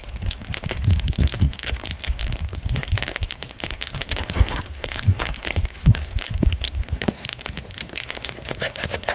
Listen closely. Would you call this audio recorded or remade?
remade